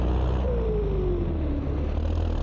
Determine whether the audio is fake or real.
real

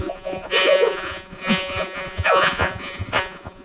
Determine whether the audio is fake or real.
fake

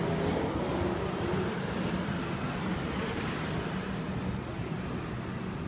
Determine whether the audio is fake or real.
real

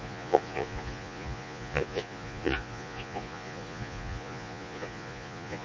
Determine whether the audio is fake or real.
fake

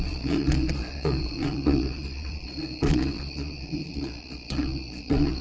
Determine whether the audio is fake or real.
fake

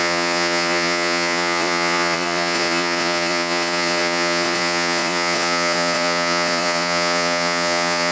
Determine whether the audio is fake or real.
fake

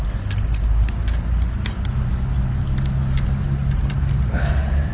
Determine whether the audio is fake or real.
real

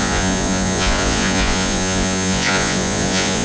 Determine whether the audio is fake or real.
fake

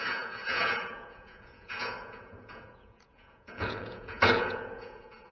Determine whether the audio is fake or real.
fake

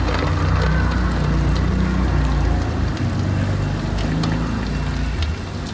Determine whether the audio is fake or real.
real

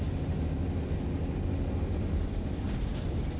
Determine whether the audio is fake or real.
real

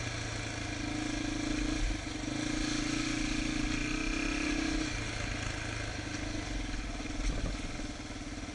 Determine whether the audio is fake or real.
real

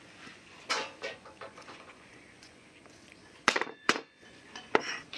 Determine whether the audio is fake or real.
fake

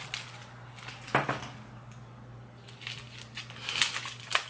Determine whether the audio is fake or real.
real